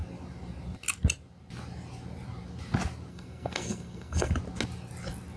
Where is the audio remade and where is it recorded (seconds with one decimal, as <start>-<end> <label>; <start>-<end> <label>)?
0.0-3.1 recorded; 3.1-4.3 remade; 4.3-5.4 recorded